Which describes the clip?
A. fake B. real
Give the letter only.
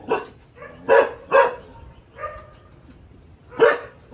B